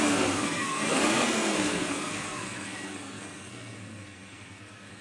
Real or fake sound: fake